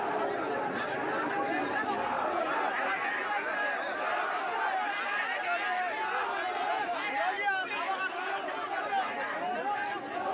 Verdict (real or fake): real